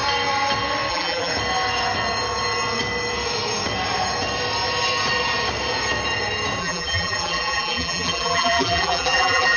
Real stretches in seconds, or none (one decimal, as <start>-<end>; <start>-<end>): 0.0-0.9; 1.3-6.6